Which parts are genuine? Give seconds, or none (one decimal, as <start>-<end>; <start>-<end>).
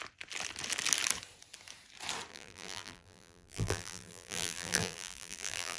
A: 0.0-2.3